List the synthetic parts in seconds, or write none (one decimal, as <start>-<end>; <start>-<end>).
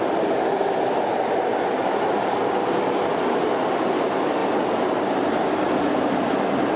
none